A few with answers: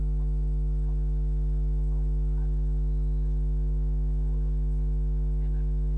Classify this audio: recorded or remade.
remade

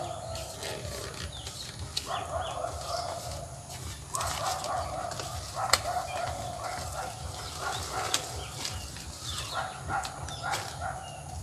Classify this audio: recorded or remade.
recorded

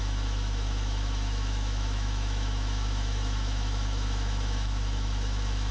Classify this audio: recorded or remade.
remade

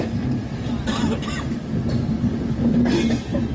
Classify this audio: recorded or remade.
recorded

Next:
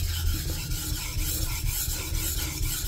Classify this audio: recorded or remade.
recorded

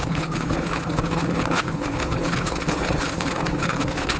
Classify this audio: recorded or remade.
remade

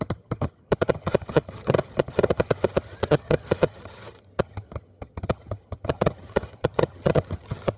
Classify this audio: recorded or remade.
remade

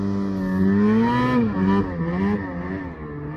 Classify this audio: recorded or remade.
recorded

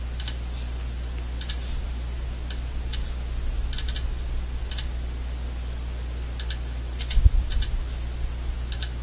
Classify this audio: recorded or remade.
recorded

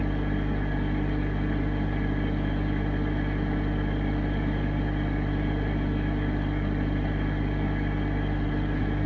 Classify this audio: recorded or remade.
recorded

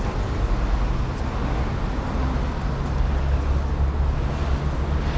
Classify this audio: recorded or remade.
recorded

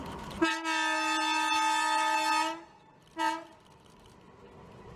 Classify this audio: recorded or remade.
recorded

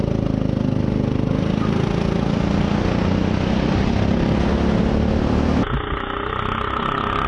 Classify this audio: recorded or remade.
recorded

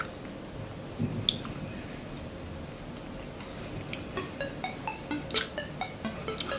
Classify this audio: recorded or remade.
recorded